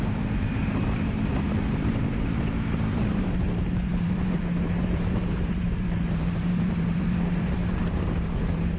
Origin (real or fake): fake